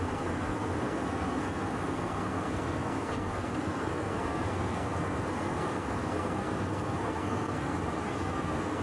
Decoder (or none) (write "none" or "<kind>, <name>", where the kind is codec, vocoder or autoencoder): codec, SNAC